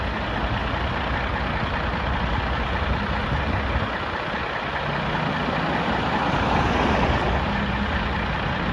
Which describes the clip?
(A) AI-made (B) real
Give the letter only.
B